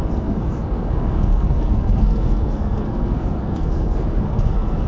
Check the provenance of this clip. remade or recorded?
remade